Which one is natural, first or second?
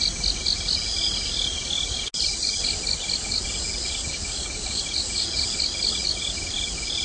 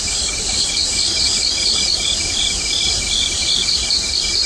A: first